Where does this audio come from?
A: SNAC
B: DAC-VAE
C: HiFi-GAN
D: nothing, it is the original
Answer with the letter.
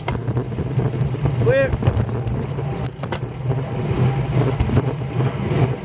D